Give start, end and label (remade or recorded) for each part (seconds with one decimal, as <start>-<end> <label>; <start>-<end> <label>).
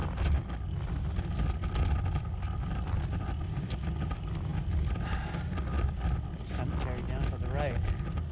0.0-8.3 recorded